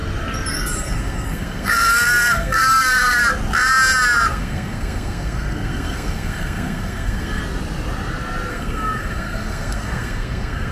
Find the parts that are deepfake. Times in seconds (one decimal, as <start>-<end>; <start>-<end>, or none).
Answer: 0.5-3.2; 4.3-7.4; 8.5-10.7